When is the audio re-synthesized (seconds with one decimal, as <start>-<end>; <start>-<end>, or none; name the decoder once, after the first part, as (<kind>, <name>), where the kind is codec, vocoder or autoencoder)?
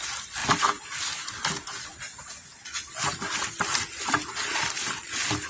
none